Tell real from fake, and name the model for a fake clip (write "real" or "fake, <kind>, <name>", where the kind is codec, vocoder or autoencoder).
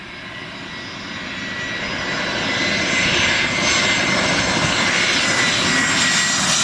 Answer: real